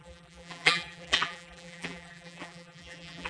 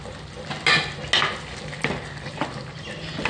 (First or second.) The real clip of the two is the second